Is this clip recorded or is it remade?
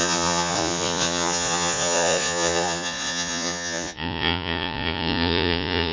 remade